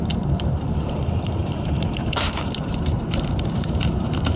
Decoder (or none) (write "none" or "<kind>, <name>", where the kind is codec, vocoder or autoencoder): vocoder, BigVGAN v2